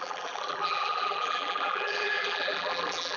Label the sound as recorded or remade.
remade